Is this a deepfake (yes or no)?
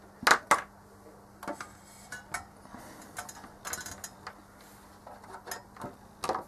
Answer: no